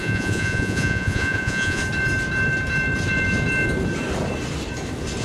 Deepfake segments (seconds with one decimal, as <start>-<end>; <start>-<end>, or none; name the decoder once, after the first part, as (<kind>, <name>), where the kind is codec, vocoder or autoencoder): 0.0-1.8 (vocoder, Vocos)